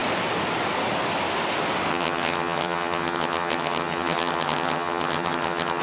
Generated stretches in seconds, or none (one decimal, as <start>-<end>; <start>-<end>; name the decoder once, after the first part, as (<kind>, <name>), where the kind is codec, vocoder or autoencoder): 1.9-5.8 (vocoder, HiFi-GAN)

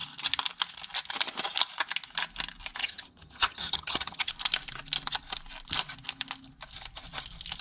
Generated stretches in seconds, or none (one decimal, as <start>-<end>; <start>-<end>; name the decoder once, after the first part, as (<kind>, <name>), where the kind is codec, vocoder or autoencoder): 2.8-4.3 (vocoder, HiFi-GAN)

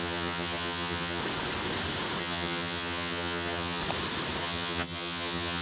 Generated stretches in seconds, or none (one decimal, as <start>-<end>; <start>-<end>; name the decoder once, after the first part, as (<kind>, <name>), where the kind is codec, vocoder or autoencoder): 0.0-1.2 (vocoder, HiFi-GAN); 2.2-3.8; 4.4-5.6

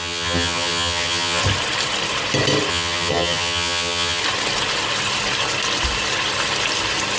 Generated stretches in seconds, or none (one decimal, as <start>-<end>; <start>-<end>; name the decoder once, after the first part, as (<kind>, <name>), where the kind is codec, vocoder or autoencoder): 0.0-1.4 (vocoder, HiFi-GAN); 2.7-4.2

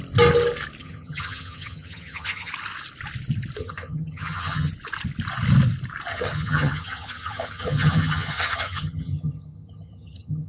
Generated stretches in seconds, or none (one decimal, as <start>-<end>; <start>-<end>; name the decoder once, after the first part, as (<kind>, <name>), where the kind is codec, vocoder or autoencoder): 0.8-2.5 (vocoder, HiFi-GAN); 3.6-4.7; 6.1-10.5

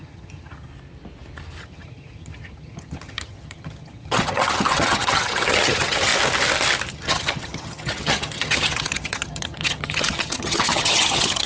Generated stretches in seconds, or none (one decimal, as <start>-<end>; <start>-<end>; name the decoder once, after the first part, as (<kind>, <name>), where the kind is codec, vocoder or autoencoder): 0.0-0.7 (vocoder, HiFi-GAN); 1.6-6.1; 6.9-11.5

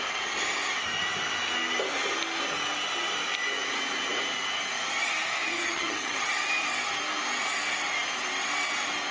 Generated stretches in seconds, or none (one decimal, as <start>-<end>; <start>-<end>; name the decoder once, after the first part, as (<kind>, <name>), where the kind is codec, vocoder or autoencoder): 5.6-6.3 (vocoder, HiFi-GAN)